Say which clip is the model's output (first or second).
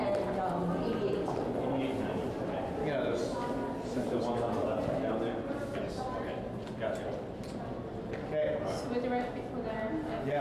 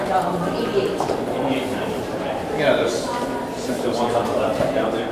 second